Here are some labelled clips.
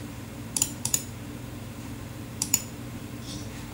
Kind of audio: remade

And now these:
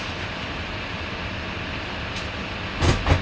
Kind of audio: recorded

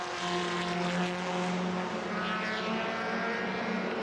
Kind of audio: recorded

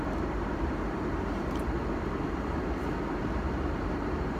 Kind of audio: remade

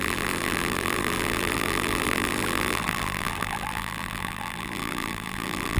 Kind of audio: remade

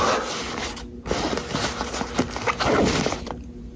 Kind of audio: recorded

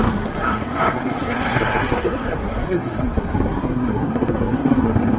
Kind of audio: remade